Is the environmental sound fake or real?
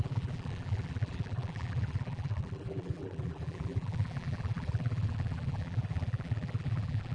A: fake